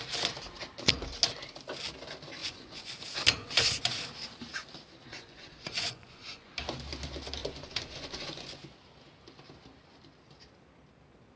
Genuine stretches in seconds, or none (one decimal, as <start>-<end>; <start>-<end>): 0.0-2.4; 2.9-3.4; 4.0-5.1; 6.5-7.4; 8.6-11.4